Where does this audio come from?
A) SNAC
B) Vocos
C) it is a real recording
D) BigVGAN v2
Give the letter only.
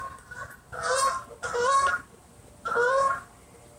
C